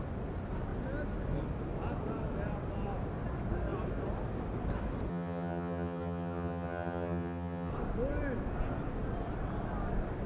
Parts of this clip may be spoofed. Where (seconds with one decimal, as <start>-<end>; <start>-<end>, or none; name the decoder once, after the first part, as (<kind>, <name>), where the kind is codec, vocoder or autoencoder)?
5.1-7.7 (vocoder, HiFi-GAN)